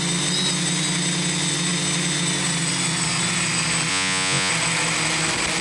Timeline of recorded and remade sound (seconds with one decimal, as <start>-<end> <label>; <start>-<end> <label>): 0.0-3.9 recorded; 3.9-4.5 remade; 4.5-5.6 recorded